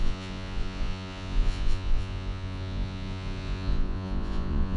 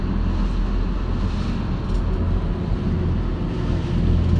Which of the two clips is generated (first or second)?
first